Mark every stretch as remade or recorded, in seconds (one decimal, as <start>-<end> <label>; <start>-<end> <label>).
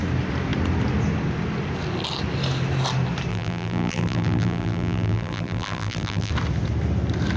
0.0-3.3 recorded; 3.3-6.3 remade; 6.3-7.4 recorded